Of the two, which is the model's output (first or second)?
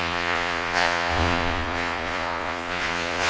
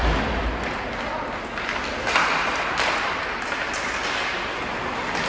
first